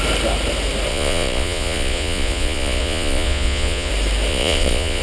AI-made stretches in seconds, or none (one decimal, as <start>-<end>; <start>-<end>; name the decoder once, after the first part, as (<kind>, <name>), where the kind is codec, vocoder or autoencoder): 0.9-3.9 (vocoder, Vocos); 4.3-5.0

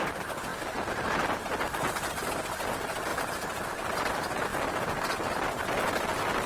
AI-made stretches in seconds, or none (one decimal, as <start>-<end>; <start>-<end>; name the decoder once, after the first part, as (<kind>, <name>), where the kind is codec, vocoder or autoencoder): none

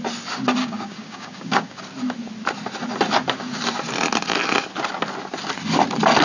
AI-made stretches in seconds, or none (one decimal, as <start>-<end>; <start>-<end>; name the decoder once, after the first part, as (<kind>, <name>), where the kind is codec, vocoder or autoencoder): 0.6-1.8 (codec, DAC)

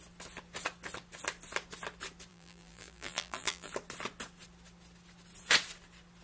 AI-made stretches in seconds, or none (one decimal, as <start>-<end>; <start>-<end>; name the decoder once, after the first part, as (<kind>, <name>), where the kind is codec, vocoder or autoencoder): 2.3-3.7 (vocoder, BigVGAN v2)

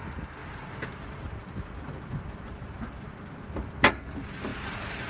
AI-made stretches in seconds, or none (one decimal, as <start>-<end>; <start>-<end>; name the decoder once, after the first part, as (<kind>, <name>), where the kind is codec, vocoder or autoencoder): 0.4-3.1 (vocoder, BigVGAN v2); 4.5-5.1

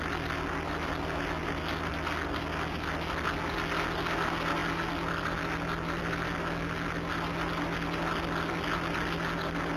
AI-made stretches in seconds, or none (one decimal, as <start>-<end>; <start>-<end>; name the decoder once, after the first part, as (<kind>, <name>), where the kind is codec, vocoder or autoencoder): none